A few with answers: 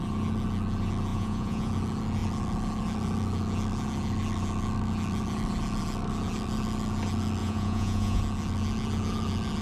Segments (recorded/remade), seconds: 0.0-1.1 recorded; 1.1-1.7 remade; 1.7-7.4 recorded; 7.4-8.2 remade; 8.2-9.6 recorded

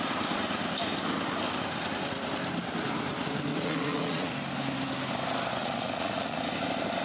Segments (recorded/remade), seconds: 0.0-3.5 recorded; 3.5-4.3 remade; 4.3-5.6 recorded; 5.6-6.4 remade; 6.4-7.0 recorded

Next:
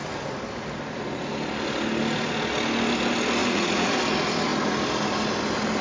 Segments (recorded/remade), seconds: 0.0-3.4 recorded; 3.4-3.9 remade; 3.9-5.8 recorded

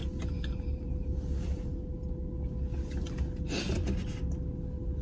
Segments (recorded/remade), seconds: 0.0-1.7 remade; 1.7-5.0 recorded

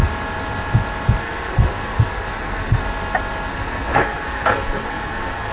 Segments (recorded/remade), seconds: 0.0-1.2 recorded; 1.2-2.8 remade; 2.8-3.5 recorded; 3.5-5.5 remade

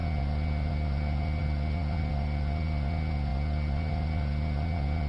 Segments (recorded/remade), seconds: 0.0-5.1 recorded